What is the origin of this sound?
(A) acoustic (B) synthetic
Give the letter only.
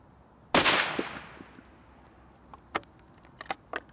A